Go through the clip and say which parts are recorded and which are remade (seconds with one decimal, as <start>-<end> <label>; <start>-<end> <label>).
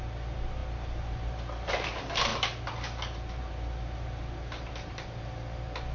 0.0-5.9 recorded